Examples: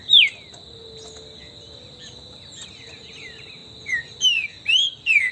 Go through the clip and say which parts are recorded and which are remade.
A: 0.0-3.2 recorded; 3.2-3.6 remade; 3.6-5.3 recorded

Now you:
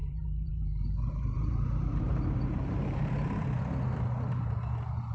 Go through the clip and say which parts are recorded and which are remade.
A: 0.0-3.1 remade; 3.1-5.1 recorded

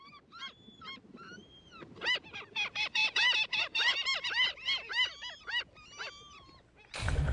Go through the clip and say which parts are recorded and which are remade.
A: 0.0-7.3 recorded

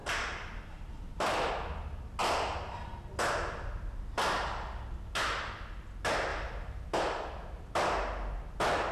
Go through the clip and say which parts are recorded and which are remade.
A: 0.0-1.5 remade; 1.5-6.3 recorded; 6.3-7.0 remade; 7.0-8.9 recorded